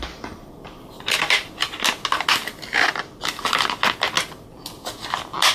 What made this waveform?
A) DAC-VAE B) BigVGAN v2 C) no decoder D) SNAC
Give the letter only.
C